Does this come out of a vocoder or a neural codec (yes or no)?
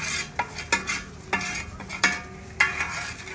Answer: no